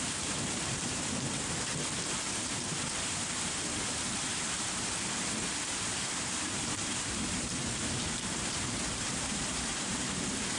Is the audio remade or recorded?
remade